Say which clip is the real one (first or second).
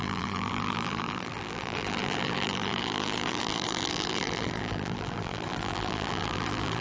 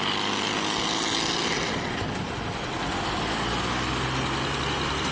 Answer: second